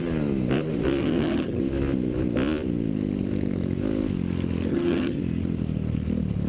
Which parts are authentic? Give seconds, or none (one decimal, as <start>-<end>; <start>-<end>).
0.0-1.0; 1.6-4.7; 5.2-6.5